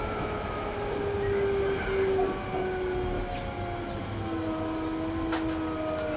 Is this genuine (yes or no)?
yes